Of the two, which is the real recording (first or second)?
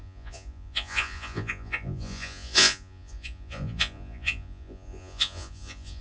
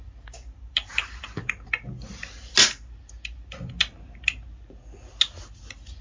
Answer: second